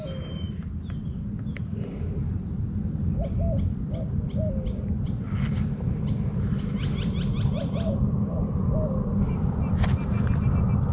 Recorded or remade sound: recorded